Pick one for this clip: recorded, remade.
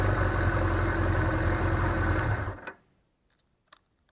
recorded